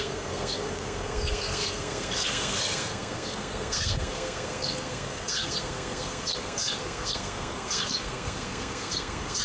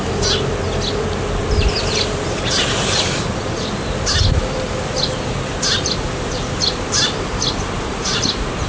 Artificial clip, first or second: first